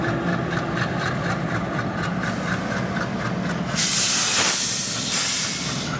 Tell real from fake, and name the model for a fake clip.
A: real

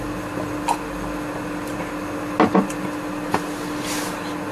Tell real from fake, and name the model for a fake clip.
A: real